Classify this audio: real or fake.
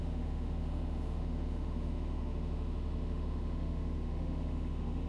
fake